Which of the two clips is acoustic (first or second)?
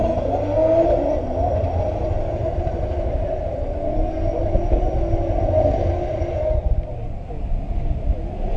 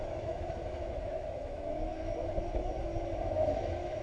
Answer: first